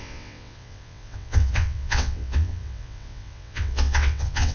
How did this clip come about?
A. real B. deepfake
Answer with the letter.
B